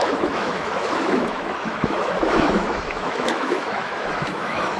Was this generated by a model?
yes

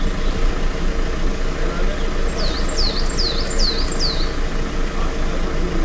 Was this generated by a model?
no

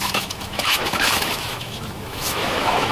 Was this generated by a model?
yes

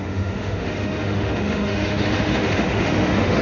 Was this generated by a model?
yes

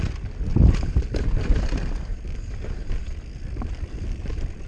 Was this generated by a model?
no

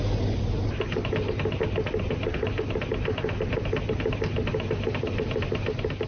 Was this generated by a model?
no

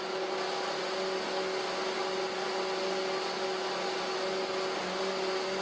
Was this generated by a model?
no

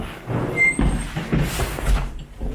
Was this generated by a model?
no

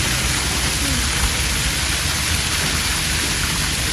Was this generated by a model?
no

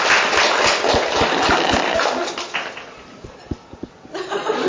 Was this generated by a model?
no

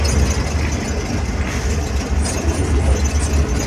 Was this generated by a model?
no